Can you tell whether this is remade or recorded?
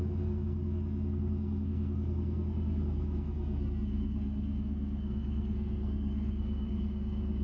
remade